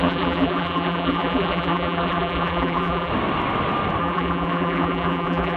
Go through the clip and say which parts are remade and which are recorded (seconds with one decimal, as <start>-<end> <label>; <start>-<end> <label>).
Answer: 0.0-3.1 remade; 3.1-4.0 recorded; 4.0-5.6 remade